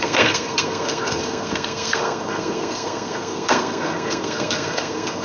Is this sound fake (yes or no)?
yes